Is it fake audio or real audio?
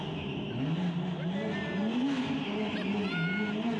real